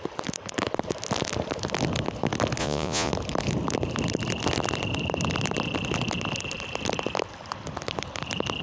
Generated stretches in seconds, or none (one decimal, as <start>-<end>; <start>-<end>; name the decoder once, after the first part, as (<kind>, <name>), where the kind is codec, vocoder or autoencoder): 2.6-3.1 (vocoder, Vocos)